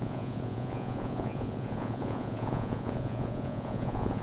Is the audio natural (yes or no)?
no